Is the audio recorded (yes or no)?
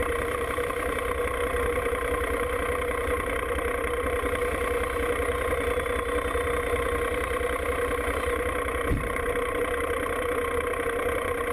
no